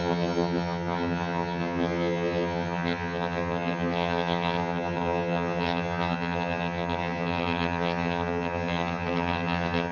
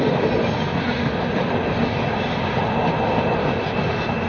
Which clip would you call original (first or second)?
second